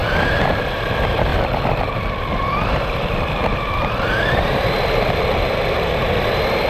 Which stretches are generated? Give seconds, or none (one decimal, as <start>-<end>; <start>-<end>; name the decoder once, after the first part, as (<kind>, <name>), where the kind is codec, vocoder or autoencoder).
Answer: 0.0-0.9 (vocoder, BigVGAN v2); 1.3-4.7